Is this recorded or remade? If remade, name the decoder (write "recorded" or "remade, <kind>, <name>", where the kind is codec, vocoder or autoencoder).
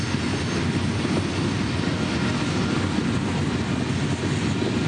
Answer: recorded